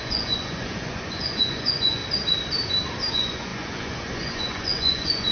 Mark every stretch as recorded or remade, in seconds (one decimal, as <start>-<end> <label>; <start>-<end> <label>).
0.0-2.0 remade; 2.0-3.1 recorded; 3.1-5.3 remade